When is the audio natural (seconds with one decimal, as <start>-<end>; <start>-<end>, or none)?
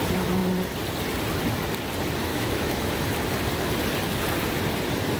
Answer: 0.0-2.3; 2.9-5.2